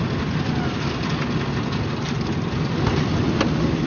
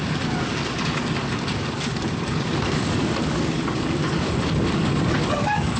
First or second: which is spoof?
second